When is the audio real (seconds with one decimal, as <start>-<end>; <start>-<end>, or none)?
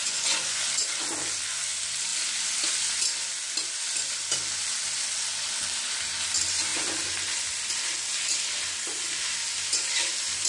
0.6-10.5